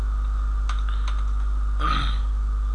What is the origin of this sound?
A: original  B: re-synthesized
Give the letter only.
A